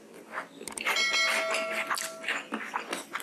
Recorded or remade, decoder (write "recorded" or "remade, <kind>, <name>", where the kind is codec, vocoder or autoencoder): recorded